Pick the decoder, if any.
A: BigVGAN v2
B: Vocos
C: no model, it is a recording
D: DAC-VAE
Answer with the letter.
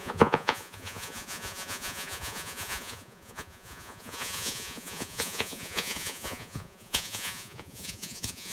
B